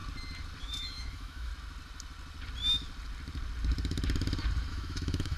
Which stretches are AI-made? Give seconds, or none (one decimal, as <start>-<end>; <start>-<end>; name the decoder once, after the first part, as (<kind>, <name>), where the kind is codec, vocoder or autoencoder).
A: 0.6-1.5 (autoencoder, DAC-VAE); 4.7-5.4

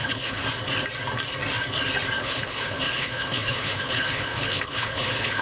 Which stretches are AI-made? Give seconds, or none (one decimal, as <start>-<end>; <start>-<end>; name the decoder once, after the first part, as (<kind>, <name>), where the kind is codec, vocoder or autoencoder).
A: 0.0-0.4 (codec, HILCodec); 2.2-5.4